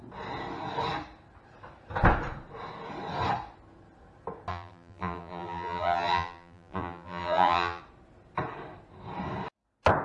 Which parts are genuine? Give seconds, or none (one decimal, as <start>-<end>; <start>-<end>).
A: 0.0-4.5; 7.8-10.0